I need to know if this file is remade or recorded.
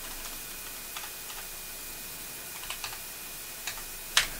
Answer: recorded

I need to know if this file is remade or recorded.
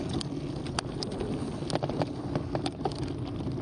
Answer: recorded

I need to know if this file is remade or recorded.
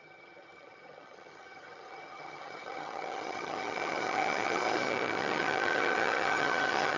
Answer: remade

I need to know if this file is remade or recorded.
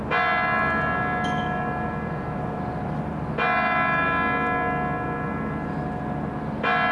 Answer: recorded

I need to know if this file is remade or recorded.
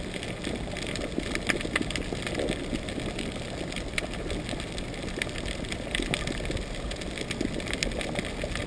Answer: recorded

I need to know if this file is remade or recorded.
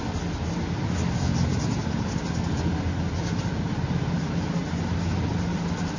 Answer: recorded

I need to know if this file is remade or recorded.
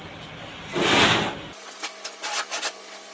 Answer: recorded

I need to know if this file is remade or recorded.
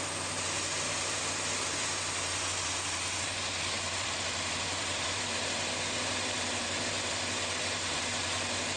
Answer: remade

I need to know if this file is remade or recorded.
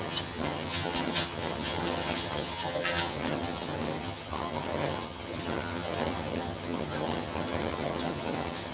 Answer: remade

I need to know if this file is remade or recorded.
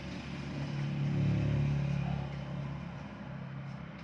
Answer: recorded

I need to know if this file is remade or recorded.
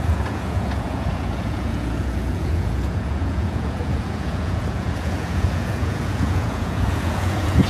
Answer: remade